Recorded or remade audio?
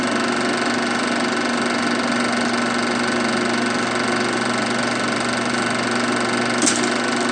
recorded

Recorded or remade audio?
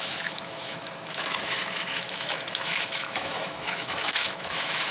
remade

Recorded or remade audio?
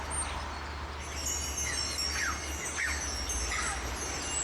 recorded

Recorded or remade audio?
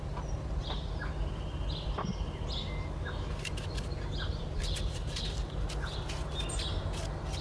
recorded